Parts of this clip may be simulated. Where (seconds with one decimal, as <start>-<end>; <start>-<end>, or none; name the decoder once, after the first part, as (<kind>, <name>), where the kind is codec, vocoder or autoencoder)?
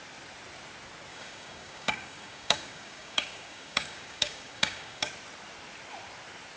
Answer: 1.1-5.1 (codec, DAC)